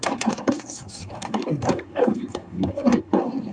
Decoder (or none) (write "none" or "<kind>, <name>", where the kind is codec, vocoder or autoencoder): codec, SNAC